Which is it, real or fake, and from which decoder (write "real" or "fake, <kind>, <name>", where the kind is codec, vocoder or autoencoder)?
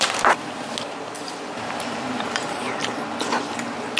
real